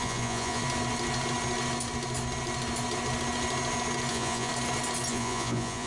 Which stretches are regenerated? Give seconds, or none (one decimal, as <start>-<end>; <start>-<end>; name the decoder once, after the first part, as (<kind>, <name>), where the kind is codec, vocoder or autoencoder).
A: 0.0-0.6 (vocoder, Vocos); 4.1-4.5; 5.1-5.9